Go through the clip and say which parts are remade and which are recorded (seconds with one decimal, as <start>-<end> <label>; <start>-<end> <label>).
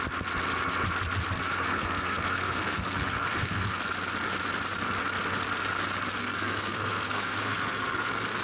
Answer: 0.0-1.7 recorded; 1.7-3.8 remade; 3.8-6.2 recorded; 6.2-8.4 remade